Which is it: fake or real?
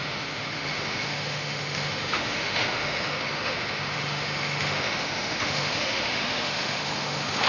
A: fake